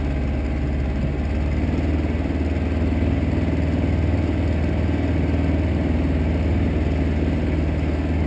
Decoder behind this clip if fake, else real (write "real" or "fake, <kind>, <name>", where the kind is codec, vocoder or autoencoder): real